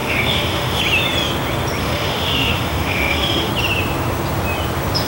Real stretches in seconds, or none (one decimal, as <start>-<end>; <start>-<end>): 0.8-1.8; 3.5-5.1